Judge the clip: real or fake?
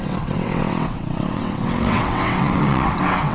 fake